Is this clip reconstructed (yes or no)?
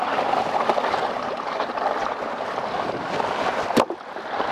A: yes